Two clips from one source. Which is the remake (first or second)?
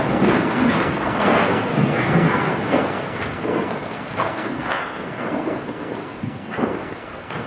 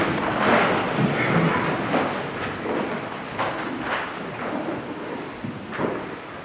first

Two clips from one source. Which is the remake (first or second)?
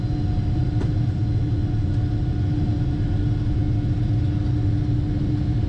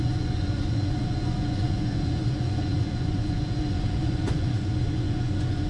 second